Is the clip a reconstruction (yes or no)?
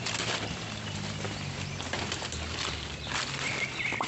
no